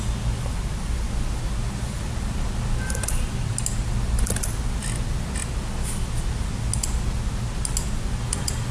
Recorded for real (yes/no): yes